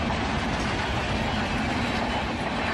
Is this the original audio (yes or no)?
yes